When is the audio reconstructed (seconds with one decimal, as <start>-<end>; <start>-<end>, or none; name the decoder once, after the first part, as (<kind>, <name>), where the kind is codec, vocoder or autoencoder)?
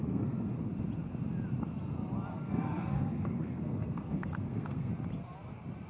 0.0-0.7 (codec, SNAC); 2.3-4.9